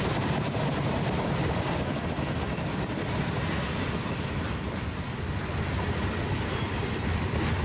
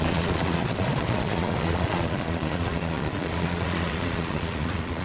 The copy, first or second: second